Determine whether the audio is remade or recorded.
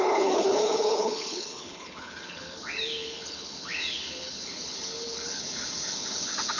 remade